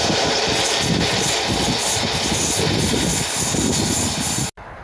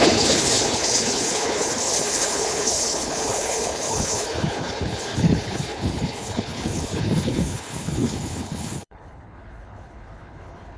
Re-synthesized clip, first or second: second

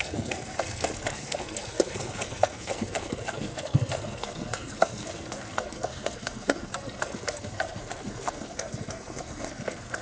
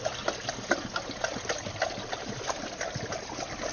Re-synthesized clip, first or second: first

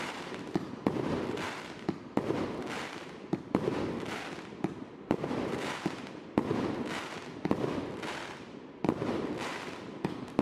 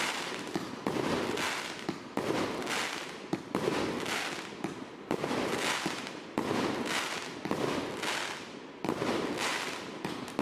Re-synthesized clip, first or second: first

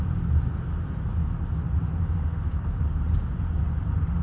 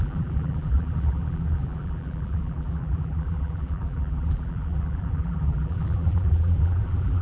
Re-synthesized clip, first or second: second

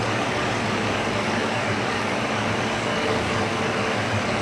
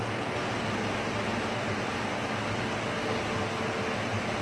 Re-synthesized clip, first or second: first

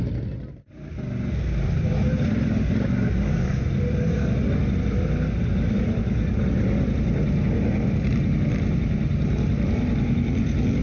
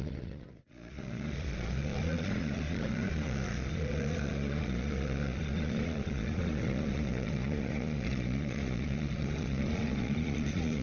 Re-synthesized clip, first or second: second